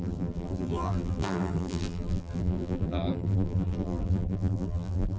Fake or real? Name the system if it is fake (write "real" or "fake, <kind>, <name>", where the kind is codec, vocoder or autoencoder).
fake, vocoder, BigVGAN v2